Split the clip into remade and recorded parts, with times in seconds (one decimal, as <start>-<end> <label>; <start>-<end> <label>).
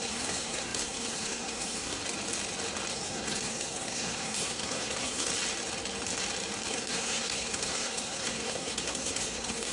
0.0-2.0 remade; 2.0-2.9 recorded; 2.9-5.3 remade; 5.3-6.7 recorded; 6.7-9.7 remade